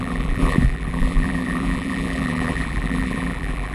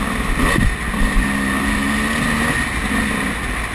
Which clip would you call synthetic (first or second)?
first